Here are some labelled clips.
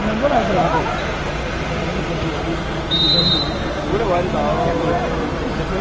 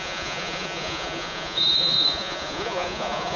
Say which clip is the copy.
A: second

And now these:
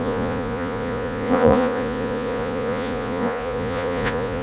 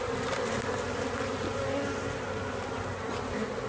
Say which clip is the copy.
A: first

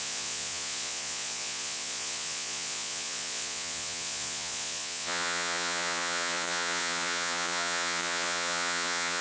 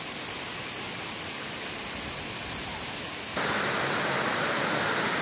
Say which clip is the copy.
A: first